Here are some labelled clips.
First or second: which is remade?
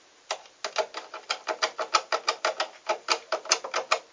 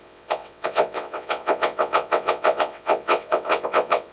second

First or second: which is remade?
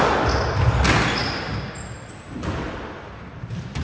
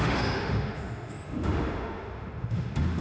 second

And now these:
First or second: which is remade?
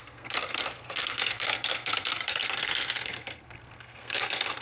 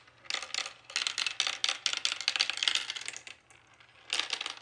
first